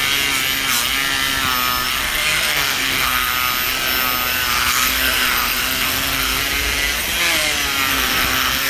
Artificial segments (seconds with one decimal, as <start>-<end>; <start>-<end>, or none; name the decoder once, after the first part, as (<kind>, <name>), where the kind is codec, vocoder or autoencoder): 2.0-3.3 (codec, SNAC); 4.5-6.4; 7.9-8.7